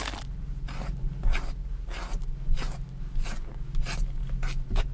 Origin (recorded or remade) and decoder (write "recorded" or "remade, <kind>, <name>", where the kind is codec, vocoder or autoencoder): recorded